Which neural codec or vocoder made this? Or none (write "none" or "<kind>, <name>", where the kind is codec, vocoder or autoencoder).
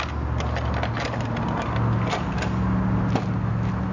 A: none